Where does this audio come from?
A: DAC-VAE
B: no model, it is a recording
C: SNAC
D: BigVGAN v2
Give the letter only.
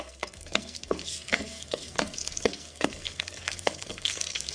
C